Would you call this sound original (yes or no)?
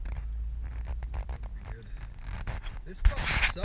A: yes